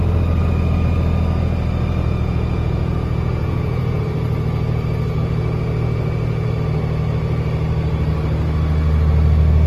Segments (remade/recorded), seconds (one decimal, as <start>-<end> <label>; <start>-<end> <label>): 0.0-2.0 recorded; 2.0-4.0 remade; 4.0-9.7 recorded